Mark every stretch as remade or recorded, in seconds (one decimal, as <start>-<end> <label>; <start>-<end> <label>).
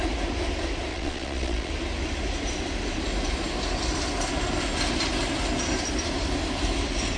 0.0-0.9 recorded; 0.9-1.7 remade; 1.7-7.2 recorded